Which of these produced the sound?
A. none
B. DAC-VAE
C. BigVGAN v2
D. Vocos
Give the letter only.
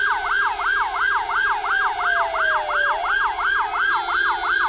A